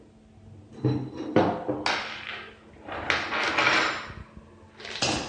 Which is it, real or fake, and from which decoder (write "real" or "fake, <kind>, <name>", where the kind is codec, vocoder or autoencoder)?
real